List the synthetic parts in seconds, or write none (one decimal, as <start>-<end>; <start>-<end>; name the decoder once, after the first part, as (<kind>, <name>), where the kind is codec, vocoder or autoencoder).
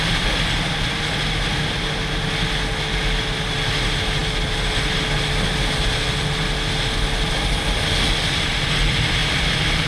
9.2-9.9 (vocoder, BigVGAN v2)